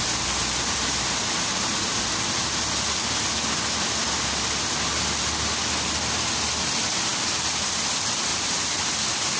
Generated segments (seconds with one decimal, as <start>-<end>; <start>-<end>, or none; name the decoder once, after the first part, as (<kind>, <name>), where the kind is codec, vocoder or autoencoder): 8.3-9.0 (vocoder, BigVGAN v2)